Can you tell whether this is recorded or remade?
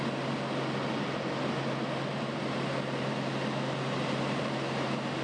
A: recorded